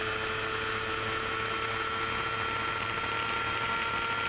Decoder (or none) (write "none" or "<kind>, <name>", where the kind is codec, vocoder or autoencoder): none